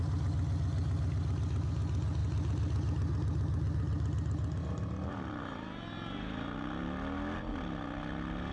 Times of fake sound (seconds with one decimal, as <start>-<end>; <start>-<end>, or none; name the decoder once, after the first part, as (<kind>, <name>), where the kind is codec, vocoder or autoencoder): none